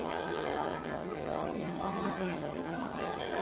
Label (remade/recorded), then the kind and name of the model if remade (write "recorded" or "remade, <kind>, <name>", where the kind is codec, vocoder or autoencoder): remade, vocoder, HiFi-GAN